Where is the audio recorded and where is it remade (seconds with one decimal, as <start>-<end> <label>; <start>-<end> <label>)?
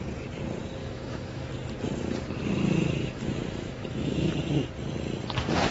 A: 0.0-0.8 recorded; 0.8-1.5 remade; 1.5-3.0 recorded; 3.0-4.3 remade; 4.3-5.7 recorded